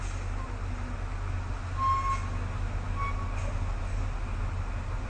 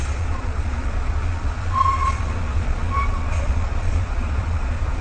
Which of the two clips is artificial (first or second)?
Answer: second